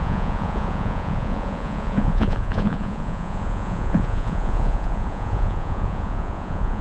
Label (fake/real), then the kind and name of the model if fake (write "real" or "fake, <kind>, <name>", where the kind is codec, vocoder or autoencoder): fake, vocoder, Vocos